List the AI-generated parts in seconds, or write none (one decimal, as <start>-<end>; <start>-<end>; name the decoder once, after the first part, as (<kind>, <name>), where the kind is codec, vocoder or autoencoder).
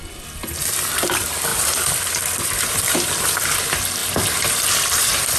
1.5-3.4 (vocoder, BigVGAN v2); 4.0-5.4